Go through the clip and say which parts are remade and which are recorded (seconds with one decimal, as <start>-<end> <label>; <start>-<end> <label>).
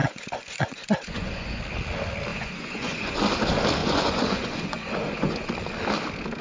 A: 0.0-1.6 remade; 1.6-2.3 recorded; 2.3-3.2 remade; 3.2-3.8 recorded; 3.8-5.5 remade; 5.5-6.4 recorded